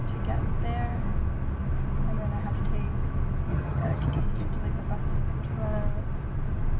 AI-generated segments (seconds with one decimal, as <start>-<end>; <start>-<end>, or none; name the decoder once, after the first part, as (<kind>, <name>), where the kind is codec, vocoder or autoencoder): 3.5-4.2 (vocoder, HiFi-GAN)